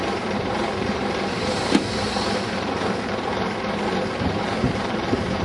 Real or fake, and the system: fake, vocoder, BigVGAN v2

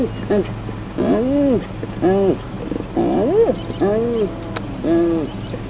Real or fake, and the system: real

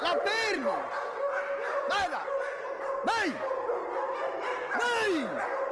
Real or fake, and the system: real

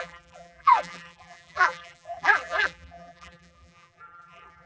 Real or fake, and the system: fake, vocoder, BigVGAN v2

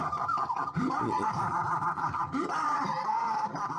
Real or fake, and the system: real